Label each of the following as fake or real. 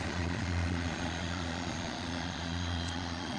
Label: fake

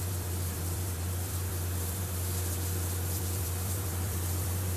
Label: fake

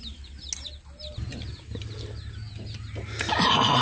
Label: real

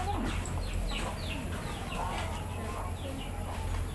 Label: real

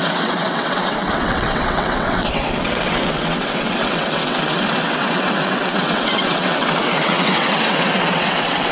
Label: fake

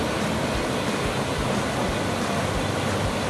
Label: real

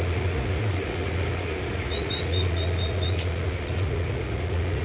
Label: fake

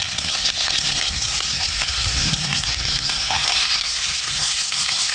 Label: fake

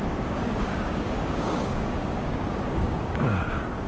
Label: fake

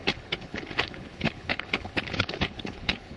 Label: fake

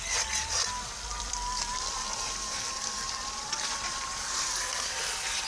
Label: fake